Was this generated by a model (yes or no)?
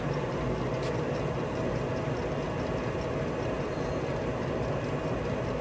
no